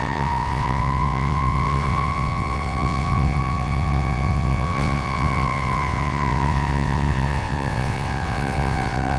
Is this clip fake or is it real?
fake